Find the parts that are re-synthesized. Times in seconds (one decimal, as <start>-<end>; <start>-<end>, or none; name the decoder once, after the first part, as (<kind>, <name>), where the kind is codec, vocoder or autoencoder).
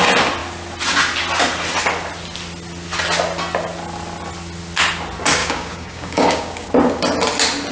5.4-6.7 (codec, DAC)